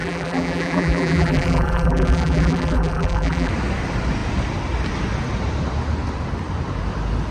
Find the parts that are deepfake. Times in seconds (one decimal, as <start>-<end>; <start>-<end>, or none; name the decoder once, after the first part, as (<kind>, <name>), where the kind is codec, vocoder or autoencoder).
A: 0.0-3.5 (vocoder, BigVGAN v2)

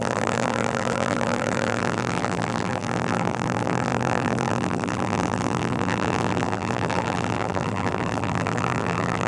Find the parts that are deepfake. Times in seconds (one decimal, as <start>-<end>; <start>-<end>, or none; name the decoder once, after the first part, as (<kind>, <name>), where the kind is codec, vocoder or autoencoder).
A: 0.0-9.3 (vocoder, BigVGAN v2)

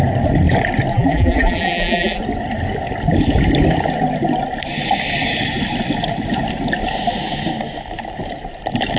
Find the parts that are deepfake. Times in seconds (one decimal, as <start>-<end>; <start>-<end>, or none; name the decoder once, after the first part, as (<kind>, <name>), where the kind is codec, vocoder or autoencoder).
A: 0.9-2.2 (vocoder, BigVGAN v2)

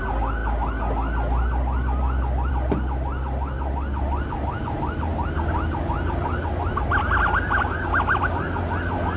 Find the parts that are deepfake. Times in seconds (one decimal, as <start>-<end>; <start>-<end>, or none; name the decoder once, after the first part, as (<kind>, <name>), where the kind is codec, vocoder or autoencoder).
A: none